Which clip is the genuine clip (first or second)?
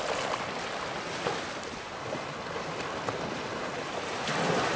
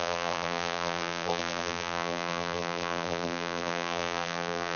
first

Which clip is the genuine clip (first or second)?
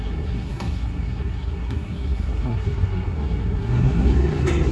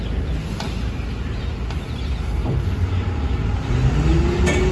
second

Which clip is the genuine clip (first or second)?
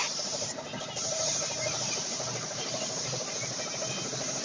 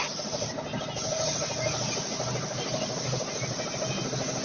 second